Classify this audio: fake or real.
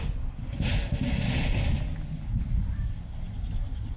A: real